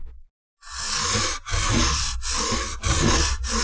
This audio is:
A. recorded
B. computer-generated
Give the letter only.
A